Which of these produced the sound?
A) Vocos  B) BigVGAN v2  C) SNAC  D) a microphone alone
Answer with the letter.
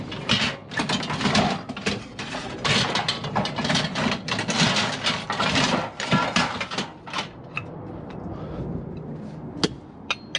D